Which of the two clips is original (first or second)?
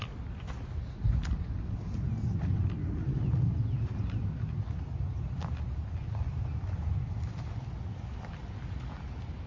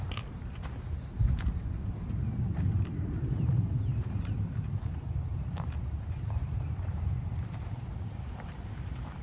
first